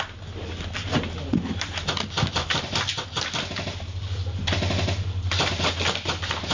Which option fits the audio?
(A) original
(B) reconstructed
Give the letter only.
A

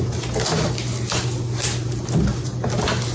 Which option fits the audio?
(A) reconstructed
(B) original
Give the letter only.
B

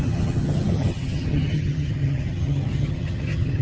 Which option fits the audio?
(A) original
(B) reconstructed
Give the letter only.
B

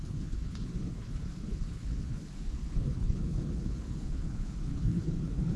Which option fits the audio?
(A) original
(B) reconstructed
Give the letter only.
B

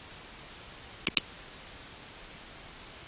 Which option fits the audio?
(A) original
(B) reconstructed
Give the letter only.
A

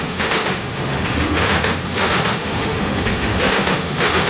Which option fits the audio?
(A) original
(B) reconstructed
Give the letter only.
B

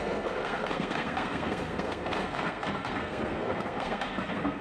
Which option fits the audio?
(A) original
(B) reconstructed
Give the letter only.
B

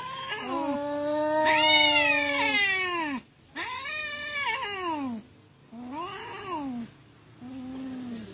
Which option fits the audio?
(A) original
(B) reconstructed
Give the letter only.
A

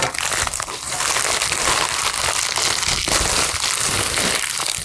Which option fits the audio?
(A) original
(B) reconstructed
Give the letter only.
A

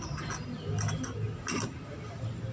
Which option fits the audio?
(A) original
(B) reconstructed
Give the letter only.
A